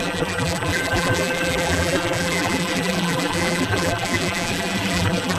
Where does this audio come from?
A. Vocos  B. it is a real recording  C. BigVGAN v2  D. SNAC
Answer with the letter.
C